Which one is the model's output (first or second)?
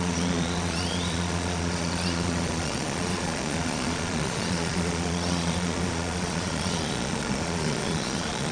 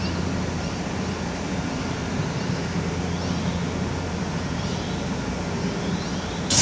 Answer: first